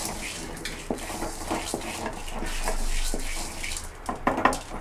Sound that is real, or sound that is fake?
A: real